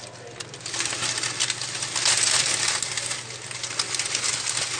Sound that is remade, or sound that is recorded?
recorded